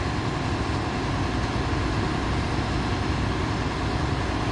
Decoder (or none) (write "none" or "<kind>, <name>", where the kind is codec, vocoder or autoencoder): none